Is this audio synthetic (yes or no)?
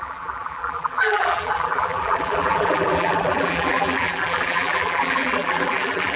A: yes